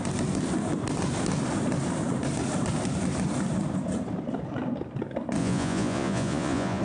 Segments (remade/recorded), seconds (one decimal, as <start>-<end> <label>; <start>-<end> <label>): 0.0-5.4 recorded; 5.4-6.8 remade